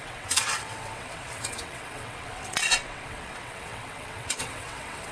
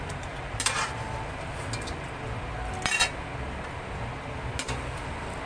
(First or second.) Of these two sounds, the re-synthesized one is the first